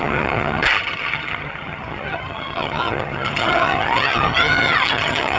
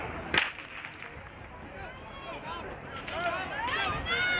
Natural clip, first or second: second